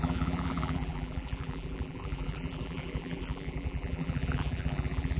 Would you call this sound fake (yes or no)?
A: yes